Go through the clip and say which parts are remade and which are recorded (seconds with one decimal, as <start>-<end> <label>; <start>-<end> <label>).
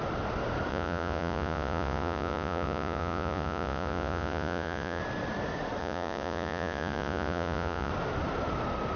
0.0-0.7 recorded; 0.7-5.0 remade; 5.0-5.8 recorded; 5.8-7.9 remade; 7.9-9.0 recorded